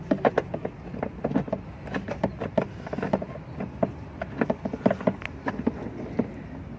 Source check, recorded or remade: recorded